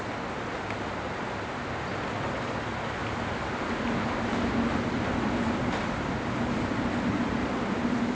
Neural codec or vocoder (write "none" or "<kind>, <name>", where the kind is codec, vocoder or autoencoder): none